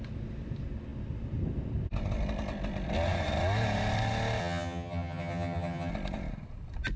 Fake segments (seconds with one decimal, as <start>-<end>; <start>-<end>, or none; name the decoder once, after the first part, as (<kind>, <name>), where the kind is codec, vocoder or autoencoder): 4.4-5.9 (vocoder, HiFi-GAN)